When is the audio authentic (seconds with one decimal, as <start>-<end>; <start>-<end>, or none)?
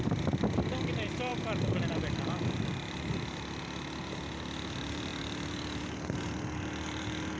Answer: 0.0-7.4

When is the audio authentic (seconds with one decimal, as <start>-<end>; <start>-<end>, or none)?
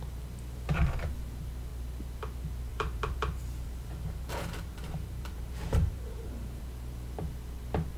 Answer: 0.0-2.7; 6.6-8.0